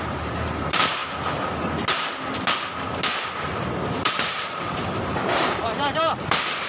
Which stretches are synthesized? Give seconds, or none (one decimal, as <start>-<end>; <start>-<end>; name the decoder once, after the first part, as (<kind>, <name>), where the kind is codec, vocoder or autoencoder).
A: 0.0-1.0 (vocoder, BigVGAN v2); 3.9-6.7